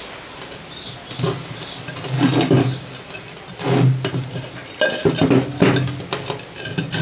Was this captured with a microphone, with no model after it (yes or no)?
yes